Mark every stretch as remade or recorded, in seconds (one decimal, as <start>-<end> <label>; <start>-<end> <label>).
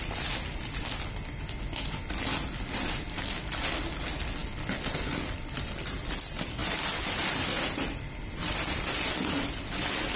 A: 0.0-10.2 recorded